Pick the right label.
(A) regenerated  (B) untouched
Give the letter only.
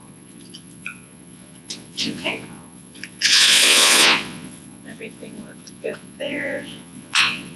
A